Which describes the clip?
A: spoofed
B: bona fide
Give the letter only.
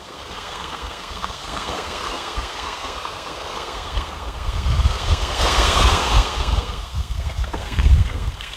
A